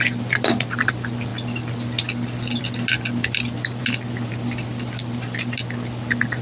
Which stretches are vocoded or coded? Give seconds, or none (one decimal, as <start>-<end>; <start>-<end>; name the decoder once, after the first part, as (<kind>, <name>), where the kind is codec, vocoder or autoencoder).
0.0-1.3 (vocoder, BigVGAN v2); 2.6-3.8; 4.3-6.4